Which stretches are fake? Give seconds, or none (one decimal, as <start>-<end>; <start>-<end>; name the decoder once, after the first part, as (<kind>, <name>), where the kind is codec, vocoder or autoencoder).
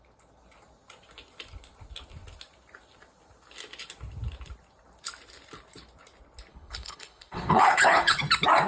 6.5-8.2 (codec, HILCodec)